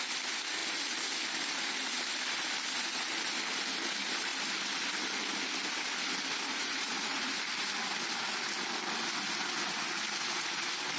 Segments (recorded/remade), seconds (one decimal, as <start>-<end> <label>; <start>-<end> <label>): 0.0-6.5 recorded; 6.5-7.3 remade; 7.3-11.0 recorded